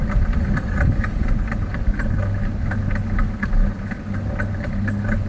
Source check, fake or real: real